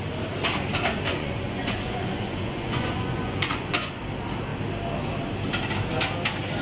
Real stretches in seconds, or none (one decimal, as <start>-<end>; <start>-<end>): 0.0-1.1; 4.0-6.6